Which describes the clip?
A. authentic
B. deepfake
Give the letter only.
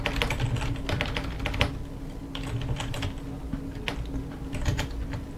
A